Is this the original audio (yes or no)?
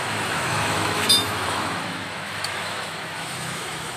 no